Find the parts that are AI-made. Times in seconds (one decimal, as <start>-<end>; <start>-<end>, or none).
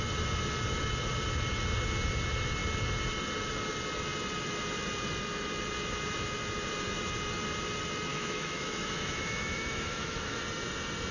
8.1-10.4